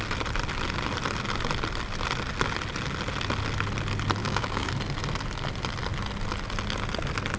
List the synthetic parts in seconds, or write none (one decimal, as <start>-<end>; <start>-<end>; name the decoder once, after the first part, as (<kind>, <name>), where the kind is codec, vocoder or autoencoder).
4.2-4.7 (codec, DAC)

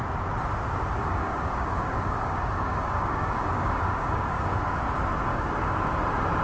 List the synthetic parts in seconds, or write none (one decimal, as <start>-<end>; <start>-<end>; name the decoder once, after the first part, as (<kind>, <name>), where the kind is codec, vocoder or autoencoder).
1.0-4.8 (codec, DAC); 5.3-5.9

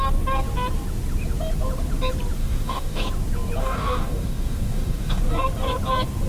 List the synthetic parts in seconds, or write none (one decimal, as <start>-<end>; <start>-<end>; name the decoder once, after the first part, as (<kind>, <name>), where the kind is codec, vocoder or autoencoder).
2.4-3.1 (codec, DAC); 3.6-5.2